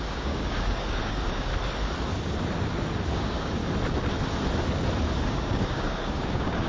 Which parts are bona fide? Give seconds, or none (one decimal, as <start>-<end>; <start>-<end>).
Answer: 1.5-3.1; 3.6-5.2